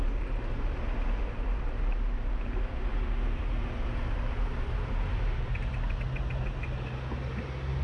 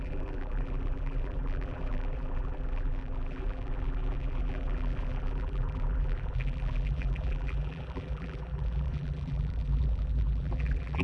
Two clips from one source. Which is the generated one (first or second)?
second